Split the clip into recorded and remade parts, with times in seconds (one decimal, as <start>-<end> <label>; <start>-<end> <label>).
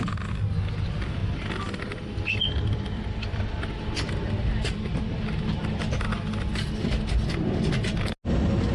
0.0-1.2 recorded; 1.2-5.9 remade; 5.9-8.7 recorded